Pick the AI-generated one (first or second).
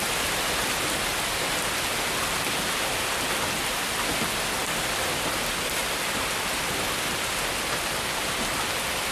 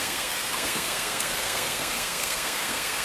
second